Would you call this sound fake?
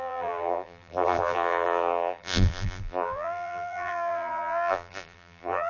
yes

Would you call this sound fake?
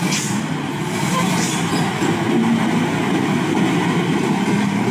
yes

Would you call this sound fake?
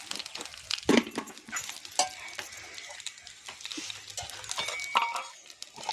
no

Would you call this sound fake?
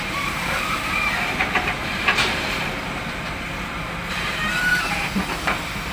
yes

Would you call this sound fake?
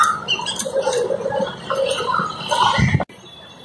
no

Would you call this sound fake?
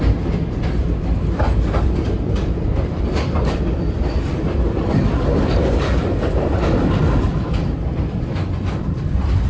yes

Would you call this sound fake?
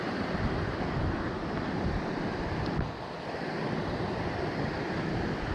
yes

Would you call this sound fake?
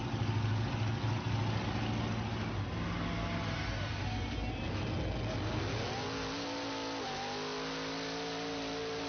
no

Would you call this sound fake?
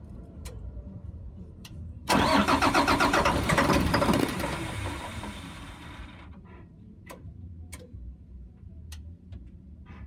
yes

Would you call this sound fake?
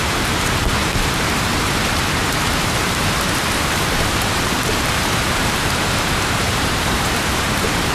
yes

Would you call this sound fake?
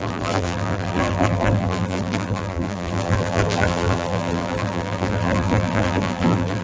yes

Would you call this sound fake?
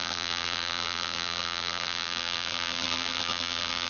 yes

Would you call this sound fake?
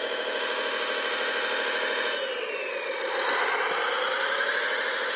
no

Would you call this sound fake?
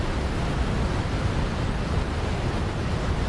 no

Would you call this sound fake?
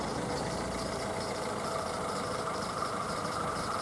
yes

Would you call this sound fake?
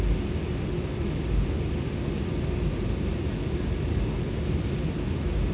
no